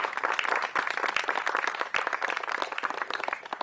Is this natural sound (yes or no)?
yes